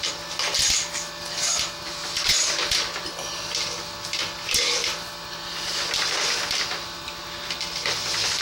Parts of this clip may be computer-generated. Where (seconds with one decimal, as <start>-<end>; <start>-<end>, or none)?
none

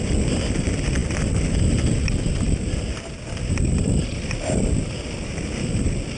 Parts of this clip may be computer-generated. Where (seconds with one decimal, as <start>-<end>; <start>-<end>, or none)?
none

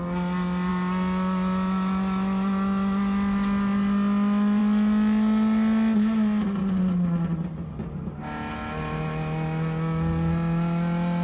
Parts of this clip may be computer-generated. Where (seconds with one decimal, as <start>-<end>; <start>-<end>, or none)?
none

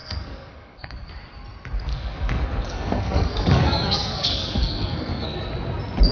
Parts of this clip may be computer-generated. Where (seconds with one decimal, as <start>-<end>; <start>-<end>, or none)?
0.0-1.1; 1.9-5.5